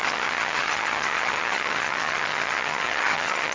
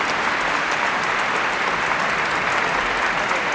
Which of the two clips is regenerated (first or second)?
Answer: first